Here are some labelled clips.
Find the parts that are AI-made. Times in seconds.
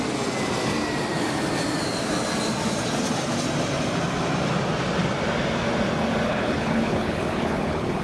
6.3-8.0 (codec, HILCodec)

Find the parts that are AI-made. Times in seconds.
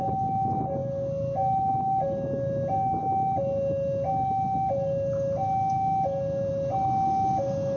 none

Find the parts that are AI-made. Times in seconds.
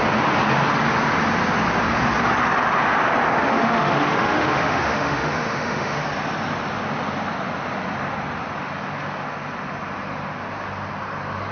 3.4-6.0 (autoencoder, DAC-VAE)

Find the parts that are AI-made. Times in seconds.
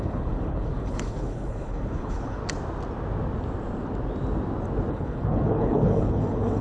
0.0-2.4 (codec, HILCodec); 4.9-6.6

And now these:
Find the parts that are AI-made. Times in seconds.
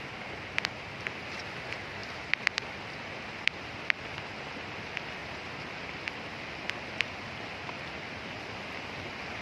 none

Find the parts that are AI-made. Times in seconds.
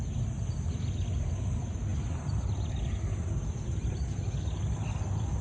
none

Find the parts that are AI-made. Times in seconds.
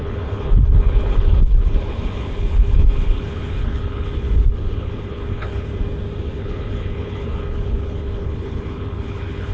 0.0-5.7 (codec, HILCodec); 6.3-9.5